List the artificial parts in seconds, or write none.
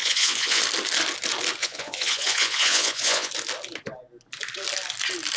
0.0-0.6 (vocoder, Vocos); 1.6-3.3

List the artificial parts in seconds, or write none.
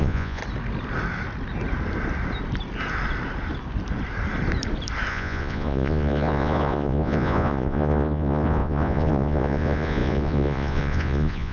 0.0-0.4 (vocoder, Vocos); 5.1-11.5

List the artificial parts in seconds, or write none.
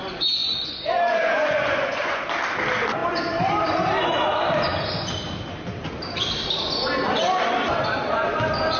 0.4-2.2 (vocoder, Vocos)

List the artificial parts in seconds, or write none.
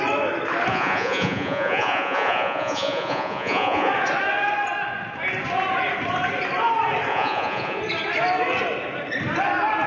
0.7-3.9 (vocoder, Vocos); 7.1-7.8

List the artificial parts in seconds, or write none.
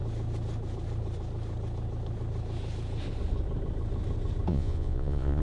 4.5-5.4 (vocoder, Vocos)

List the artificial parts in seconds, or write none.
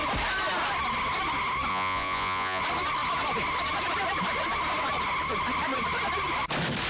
1.7-2.6 (vocoder, Vocos)